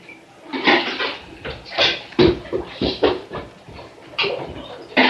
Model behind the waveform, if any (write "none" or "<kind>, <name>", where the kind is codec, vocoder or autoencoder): vocoder, BigVGAN v2